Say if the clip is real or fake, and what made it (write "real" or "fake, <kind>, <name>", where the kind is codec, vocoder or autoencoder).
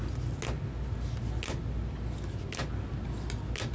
real